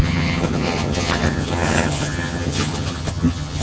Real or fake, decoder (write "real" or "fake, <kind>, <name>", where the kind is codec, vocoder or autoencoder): fake, vocoder, HiFi-GAN